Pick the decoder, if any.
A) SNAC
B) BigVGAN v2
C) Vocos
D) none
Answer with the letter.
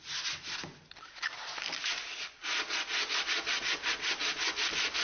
D